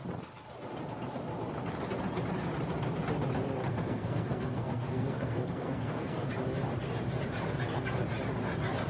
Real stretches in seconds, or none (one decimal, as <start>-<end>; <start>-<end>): 0.0-3.6; 6.3-8.9